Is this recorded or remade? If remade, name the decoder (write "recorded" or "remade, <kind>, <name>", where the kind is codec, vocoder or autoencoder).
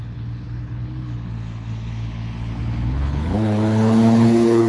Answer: remade, codec, HILCodec